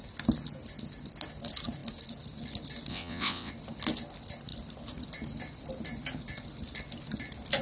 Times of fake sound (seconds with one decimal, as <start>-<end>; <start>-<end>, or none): 2.9-3.5